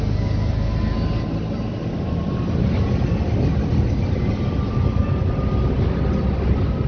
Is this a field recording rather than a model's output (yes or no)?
yes